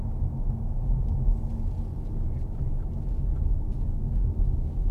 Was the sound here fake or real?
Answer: real